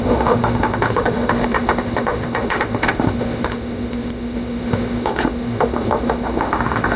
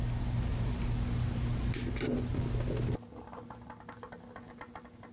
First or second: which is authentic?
second